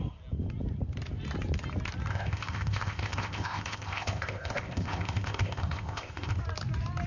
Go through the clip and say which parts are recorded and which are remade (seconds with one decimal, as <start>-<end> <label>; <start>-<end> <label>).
0.0-2.1 recorded; 2.1-6.4 remade; 6.4-7.1 recorded